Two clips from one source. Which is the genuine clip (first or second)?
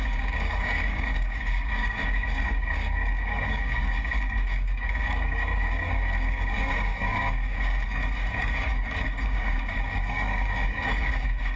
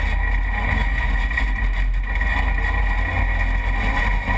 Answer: second